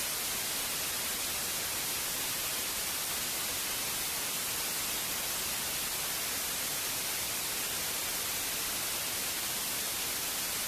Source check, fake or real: real